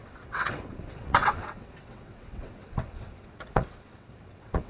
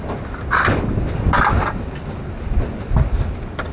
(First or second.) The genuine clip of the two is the second